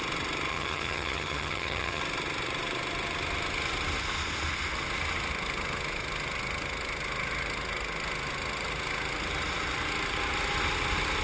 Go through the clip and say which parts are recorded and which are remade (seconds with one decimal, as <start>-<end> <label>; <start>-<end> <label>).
0.0-0.5 recorded; 0.5-2.0 remade; 2.0-11.2 recorded